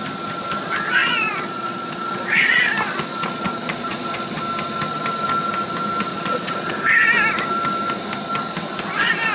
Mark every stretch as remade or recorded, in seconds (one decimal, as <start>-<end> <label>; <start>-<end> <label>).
0.0-1.0 recorded; 1.0-2.7 remade; 2.7-3.1 recorded; 3.1-4.4 remade; 4.4-6.1 recorded; 6.1-6.7 remade; 6.7-9.3 recorded